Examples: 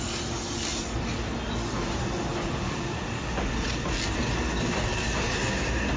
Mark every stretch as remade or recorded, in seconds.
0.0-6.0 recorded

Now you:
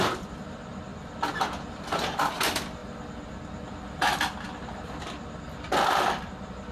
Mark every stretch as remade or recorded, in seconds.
0.0-6.7 recorded

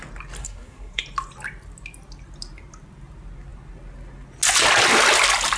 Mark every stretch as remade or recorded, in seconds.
0.0-0.4 recorded; 0.4-1.0 remade; 1.0-5.6 recorded

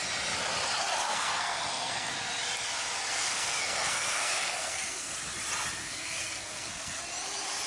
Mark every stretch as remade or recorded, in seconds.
0.0-1.0 recorded; 1.0-2.1 remade; 2.1-3.1 recorded; 3.1-5.2 remade; 5.2-5.8 recorded; 5.8-7.0 remade; 7.0-7.7 recorded

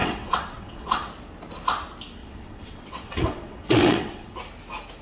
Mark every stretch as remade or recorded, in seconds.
0.0-1.1 remade; 1.1-2.2 recorded; 2.2-4.4 remade; 4.4-5.0 recorded

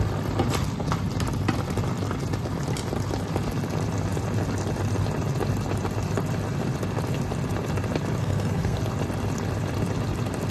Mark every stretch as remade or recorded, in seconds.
0.0-8.2 recorded; 8.2-8.8 remade; 8.8-10.5 recorded

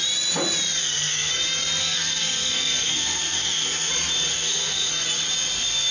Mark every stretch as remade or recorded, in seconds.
0.0-0.8 recorded; 0.8-1.3 remade; 1.3-1.8 recorded; 1.8-3.9 remade; 3.9-4.3 recorded; 4.3-4.9 remade; 4.9-5.9 recorded

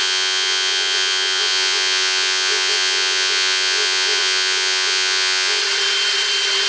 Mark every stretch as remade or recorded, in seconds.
0.0-5.6 remade; 5.6-6.7 recorded